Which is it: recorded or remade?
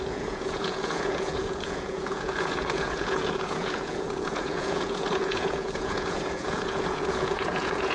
remade